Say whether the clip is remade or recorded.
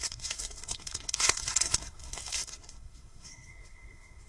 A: remade